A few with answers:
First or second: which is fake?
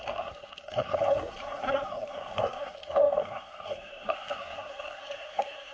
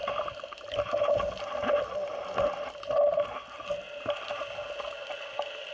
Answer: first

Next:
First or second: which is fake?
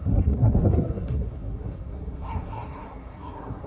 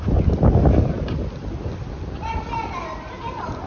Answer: first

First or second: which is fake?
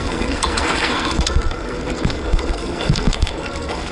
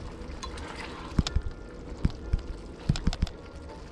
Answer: first